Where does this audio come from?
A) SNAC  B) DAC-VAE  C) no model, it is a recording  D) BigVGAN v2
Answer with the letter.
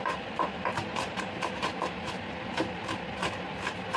D